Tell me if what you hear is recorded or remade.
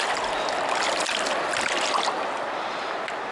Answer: recorded